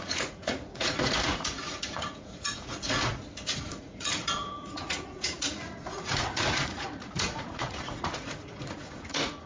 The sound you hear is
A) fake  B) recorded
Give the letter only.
A